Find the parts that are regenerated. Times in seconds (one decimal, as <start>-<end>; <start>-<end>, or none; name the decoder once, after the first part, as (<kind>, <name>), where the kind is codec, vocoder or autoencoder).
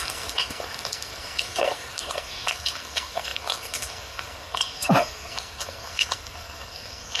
0.0-7.2 (codec, SNAC)